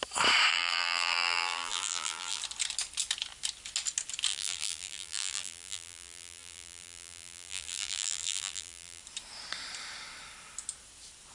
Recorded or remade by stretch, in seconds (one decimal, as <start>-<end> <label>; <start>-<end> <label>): 0.0-0.5 recorded; 0.5-2.4 remade; 2.4-4.3 recorded; 4.3-9.0 remade; 9.0-11.3 recorded